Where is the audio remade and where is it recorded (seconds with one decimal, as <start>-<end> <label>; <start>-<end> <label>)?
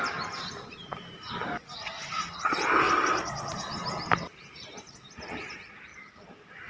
0.0-6.7 recorded